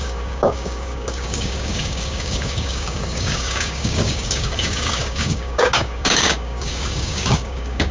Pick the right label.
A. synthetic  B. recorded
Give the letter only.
A